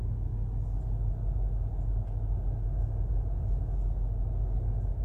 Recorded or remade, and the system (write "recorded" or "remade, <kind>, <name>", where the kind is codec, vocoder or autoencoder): recorded